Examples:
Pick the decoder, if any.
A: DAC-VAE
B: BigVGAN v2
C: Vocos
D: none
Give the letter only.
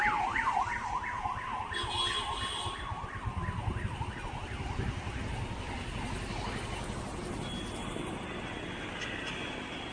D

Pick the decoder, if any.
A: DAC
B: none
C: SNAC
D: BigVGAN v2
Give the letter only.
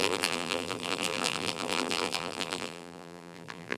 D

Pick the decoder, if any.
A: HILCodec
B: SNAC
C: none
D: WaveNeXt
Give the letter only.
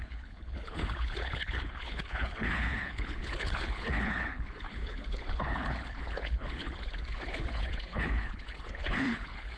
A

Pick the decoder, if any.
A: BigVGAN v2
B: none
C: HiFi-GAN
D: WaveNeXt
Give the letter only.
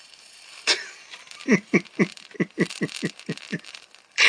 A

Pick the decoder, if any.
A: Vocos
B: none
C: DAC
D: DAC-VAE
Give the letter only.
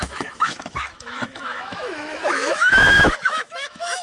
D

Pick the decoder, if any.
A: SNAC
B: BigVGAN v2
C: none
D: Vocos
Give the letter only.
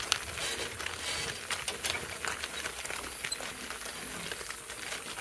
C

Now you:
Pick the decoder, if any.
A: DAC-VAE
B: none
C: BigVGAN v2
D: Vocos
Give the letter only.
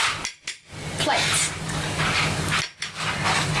B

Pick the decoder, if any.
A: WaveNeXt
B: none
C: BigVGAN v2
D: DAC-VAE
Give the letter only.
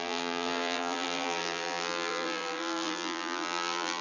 C